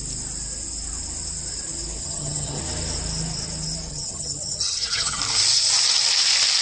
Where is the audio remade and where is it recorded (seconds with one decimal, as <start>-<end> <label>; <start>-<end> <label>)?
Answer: 0.0-2.0 recorded; 2.0-2.6 remade; 2.6-3.9 recorded; 3.9-5.2 remade; 5.2-6.6 recorded